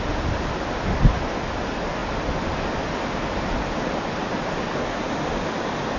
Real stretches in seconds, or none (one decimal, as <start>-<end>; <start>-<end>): 0.0-6.0